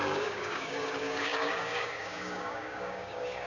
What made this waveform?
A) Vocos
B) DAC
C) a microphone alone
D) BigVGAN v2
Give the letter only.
B